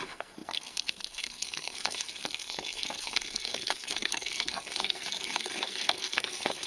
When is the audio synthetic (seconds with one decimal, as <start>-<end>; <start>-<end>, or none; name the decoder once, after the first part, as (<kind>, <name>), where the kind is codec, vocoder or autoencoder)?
0.0-6.7 (codec, SNAC)

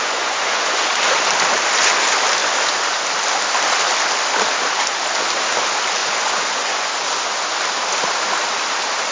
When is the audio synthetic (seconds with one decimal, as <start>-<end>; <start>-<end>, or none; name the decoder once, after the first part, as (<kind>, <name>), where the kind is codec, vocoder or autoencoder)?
0.0-0.9 (vocoder, Vocos); 6.0-6.9

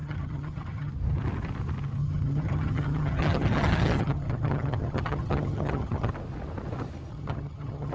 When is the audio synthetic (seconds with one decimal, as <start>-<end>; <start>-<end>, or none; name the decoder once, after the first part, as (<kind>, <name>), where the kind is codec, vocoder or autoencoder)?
0.0-0.9 (vocoder, HiFi-GAN); 2.0-6.1; 7.1-7.9

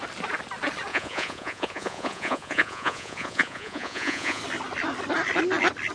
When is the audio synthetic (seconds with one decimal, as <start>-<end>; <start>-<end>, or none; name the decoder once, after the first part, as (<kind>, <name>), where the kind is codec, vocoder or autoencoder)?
0.9-4.4 (vocoder, Vocos)

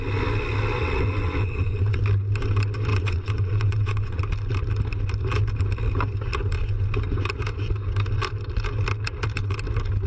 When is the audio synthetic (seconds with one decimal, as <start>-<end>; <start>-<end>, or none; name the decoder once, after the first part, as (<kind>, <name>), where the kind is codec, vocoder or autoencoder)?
0.8-2.0 (vocoder, WaveNeXt); 2.9-4.2

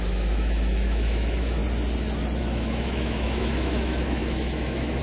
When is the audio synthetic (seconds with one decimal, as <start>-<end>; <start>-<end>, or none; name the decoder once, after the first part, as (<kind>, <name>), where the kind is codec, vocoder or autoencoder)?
0.0-1.6 (autoencoder, DAC-VAE); 2.4-5.0